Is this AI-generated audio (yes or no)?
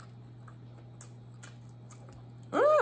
no